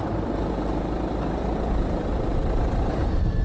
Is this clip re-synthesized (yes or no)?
yes